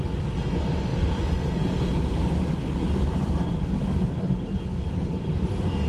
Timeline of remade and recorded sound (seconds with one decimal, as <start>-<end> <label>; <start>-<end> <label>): 0.0-5.9 recorded